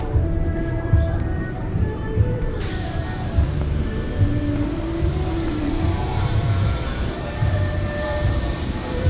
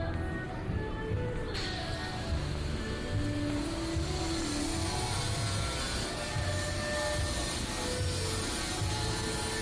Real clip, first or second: second